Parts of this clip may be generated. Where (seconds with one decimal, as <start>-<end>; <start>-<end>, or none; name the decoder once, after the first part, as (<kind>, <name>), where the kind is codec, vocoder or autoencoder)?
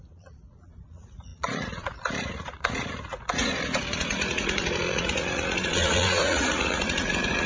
0.0-7.5 (vocoder, Vocos)